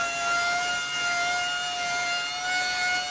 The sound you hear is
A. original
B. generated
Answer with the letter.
A